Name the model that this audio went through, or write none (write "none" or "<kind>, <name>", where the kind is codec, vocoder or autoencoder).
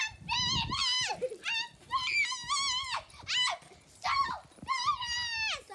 none